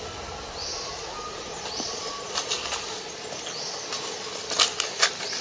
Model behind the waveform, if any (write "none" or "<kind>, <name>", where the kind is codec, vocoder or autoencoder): none